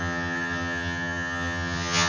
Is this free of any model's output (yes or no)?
no